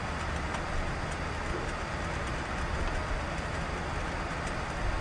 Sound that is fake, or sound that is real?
real